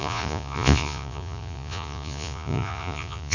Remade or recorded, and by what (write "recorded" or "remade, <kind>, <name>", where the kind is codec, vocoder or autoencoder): remade, vocoder, Vocos